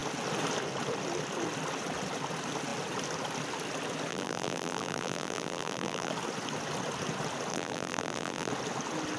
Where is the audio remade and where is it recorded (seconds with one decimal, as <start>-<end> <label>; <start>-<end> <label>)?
0.0-4.1 recorded; 4.1-6.1 remade; 6.1-7.5 recorded; 7.5-8.5 remade; 8.5-9.2 recorded